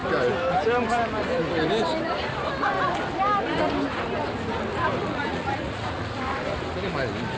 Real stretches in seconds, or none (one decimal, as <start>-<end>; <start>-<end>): 0.0-5.0; 6.0-7.4